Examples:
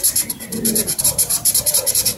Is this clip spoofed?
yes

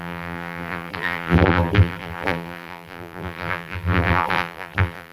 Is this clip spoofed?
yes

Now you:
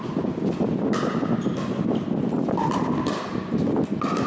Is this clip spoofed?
no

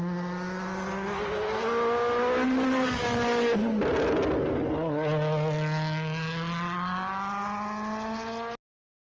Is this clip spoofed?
no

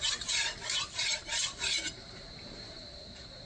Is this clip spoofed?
yes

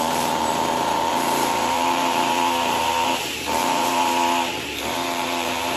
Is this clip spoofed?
yes